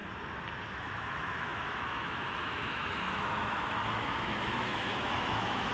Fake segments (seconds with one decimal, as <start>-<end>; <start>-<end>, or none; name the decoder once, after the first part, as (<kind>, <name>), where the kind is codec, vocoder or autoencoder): 0.6-5.7 (autoencoder, DAC-VAE)